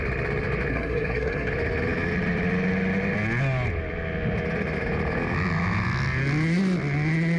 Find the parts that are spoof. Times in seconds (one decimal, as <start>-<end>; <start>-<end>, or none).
0.7-1.5